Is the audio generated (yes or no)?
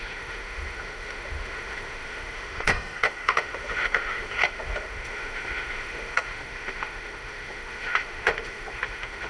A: yes